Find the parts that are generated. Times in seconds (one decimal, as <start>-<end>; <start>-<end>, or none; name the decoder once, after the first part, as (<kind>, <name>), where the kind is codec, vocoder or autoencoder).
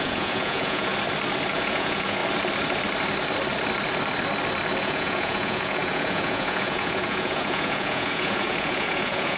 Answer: 0.0-0.9 (vocoder, Vocos); 1.5-2.2; 4.8-9.4